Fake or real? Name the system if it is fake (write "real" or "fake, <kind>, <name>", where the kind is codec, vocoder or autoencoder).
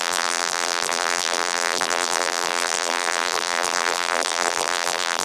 fake, vocoder, BigVGAN v2